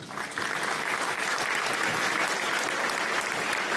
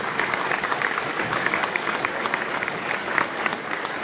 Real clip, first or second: first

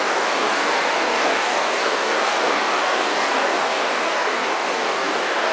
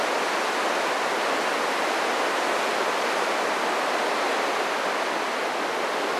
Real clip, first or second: second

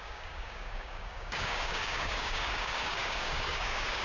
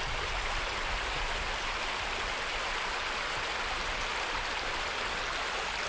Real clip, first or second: second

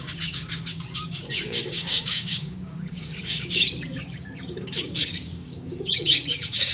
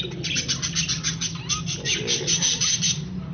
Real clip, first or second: second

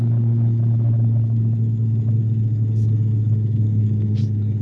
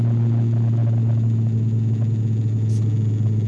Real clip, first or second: second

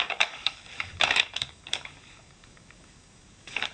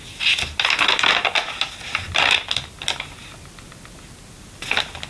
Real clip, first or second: second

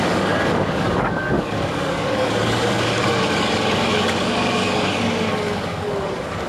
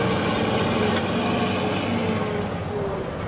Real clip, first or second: second